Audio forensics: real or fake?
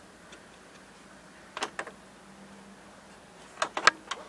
real